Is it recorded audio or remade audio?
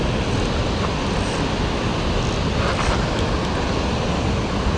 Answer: recorded